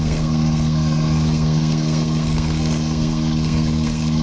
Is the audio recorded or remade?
remade